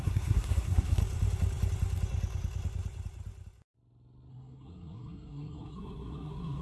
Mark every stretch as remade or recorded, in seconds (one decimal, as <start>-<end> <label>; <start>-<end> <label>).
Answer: 0.0-1.0 remade; 1.0-4.3 recorded; 4.3-6.6 remade